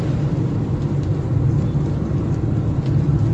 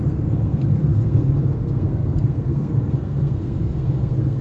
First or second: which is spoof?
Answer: second